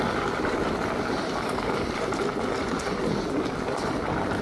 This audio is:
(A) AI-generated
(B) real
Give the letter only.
B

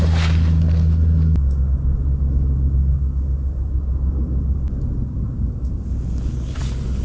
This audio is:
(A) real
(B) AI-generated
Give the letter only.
A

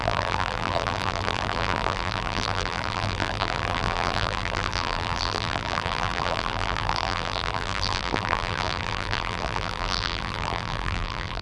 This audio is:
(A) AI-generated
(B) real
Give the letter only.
A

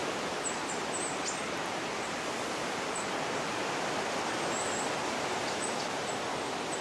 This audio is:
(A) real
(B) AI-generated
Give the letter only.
A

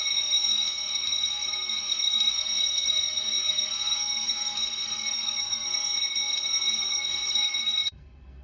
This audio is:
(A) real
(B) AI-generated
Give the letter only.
B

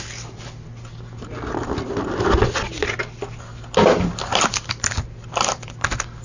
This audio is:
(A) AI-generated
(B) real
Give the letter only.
B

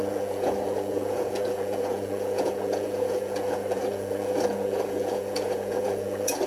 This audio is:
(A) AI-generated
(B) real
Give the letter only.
A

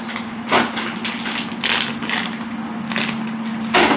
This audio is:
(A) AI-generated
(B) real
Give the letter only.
B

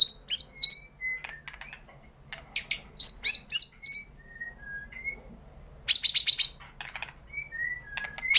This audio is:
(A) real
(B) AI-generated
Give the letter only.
A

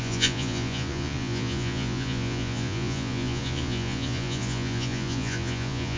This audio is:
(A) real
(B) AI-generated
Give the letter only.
B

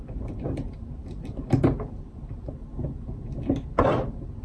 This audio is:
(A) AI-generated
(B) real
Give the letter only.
B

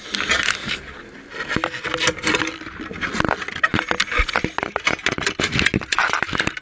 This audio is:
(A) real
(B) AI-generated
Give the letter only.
A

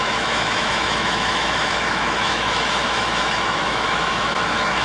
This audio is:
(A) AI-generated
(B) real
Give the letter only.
A